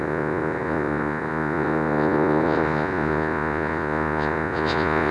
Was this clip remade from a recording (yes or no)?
yes